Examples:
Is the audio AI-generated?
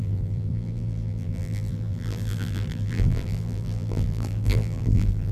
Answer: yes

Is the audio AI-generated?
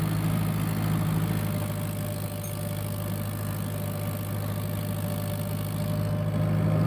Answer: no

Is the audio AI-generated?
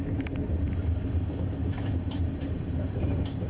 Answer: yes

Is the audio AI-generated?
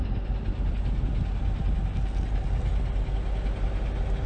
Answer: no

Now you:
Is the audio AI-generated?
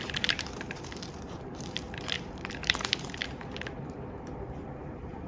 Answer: yes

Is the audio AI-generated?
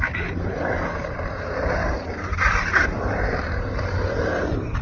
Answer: yes